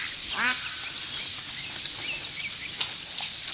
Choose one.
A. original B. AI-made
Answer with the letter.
A